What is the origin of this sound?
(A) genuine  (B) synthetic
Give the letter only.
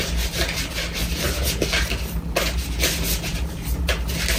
A